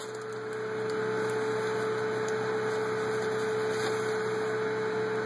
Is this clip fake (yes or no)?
no